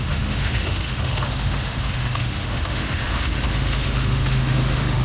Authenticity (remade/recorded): remade